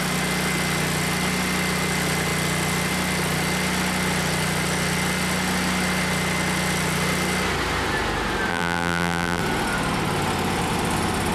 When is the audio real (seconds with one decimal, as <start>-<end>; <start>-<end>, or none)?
0.0-8.5; 9.4-11.3